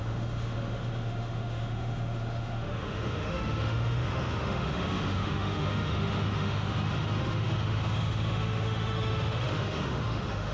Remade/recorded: remade